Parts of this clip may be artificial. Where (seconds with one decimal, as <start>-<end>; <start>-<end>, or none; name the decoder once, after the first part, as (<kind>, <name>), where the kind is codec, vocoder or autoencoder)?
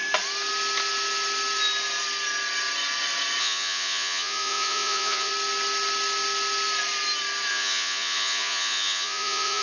3.4-5.3 (vocoder, Vocos); 7.5-9.6